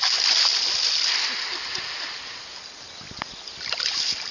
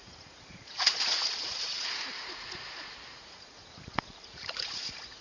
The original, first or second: first